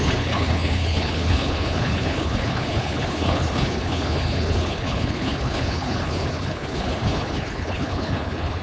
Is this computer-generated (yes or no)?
yes